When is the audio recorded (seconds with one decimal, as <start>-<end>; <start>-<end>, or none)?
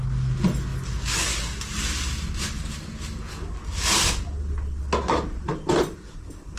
0.0-6.6